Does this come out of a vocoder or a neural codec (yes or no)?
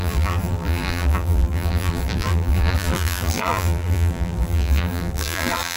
yes